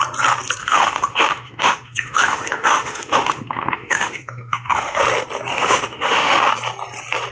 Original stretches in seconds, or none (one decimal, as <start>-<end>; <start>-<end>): 0.0-0.6; 5.0-5.5; 6.4-7.3